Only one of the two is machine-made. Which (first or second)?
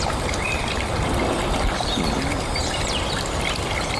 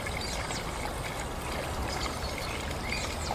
first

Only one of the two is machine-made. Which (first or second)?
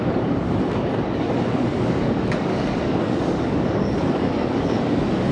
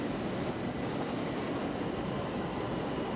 first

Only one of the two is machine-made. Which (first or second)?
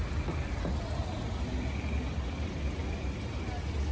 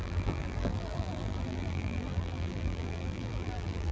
second